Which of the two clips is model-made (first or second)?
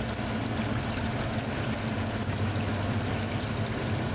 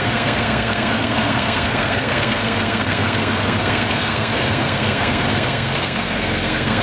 second